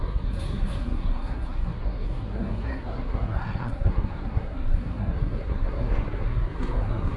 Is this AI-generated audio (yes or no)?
yes